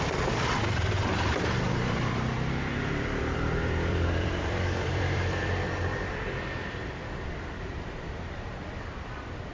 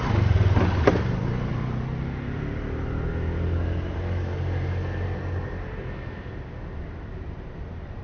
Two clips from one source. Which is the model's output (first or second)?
first